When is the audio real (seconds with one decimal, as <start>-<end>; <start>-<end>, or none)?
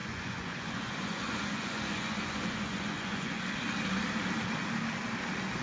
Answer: 3.4-5.6